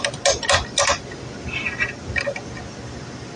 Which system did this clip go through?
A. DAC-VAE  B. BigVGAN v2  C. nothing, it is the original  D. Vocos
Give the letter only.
C